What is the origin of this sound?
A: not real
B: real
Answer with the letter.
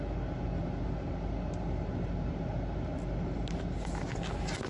B